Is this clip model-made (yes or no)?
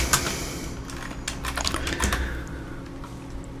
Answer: no